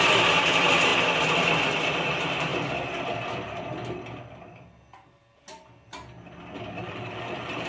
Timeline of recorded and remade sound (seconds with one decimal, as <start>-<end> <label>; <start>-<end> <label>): 0.0-0.9 remade; 0.9-1.9 recorded; 1.9-2.5 remade; 2.5-6.8 recorded; 6.8-7.7 remade